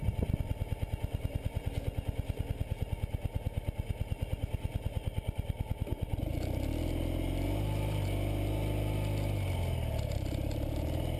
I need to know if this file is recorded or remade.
recorded